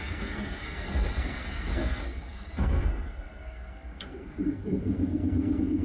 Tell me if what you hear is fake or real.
fake